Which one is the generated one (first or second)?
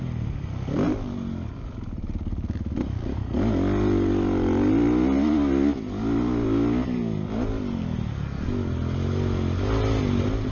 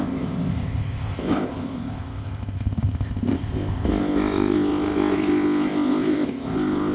second